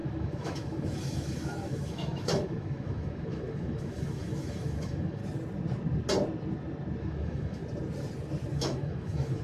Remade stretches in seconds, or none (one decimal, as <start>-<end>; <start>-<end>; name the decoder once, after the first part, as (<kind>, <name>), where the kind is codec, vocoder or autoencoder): 0.0-5.2 (autoencoder, DAC-VAE); 7.0-7.6; 8.5-9.4